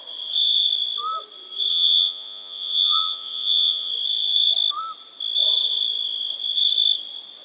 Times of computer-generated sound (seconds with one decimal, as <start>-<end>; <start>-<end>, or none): 1.7-3.9